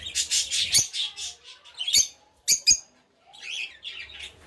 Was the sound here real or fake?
real